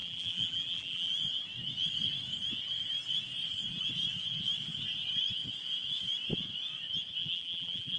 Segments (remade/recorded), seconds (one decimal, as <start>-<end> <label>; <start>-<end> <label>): 0.0-1.1 remade; 1.1-7.2 recorded; 7.2-8.0 remade